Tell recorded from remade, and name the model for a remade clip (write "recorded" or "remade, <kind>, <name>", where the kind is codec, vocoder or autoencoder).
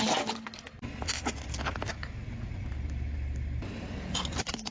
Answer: recorded